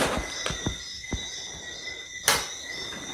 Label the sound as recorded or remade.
recorded